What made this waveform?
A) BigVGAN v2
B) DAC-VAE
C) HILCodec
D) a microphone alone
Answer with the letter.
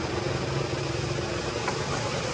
D